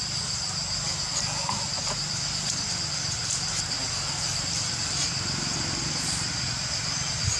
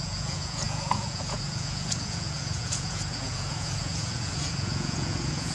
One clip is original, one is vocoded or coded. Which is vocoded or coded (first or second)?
second